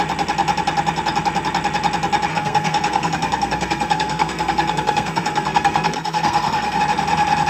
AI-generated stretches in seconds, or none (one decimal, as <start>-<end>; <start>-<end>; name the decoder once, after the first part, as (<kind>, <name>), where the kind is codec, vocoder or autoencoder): 2.3-6.8 (codec, SNAC)